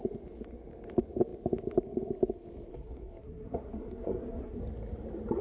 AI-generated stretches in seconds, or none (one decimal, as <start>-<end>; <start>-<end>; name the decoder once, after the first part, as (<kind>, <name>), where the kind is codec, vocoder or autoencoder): 2.7-4.6 (codec, SNAC)